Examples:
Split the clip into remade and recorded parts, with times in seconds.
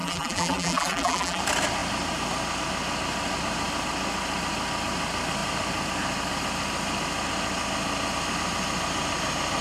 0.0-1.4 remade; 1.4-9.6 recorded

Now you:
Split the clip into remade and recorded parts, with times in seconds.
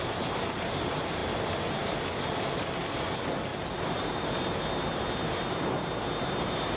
0.0-3.5 recorded; 3.5-4.3 remade; 4.3-6.8 recorded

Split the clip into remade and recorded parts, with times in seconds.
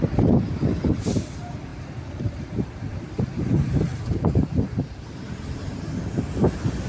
0.0-1.7 recorded; 1.7-5.8 remade; 5.8-6.9 recorded